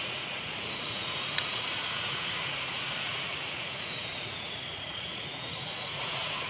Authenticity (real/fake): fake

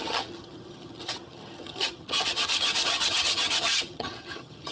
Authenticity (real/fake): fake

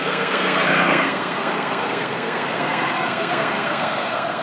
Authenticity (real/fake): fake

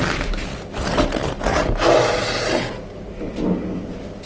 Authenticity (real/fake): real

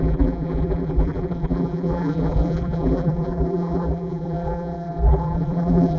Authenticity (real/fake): fake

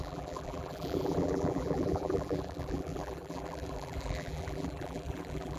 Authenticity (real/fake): fake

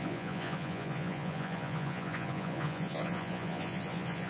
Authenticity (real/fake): fake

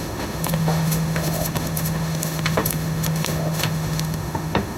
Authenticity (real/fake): fake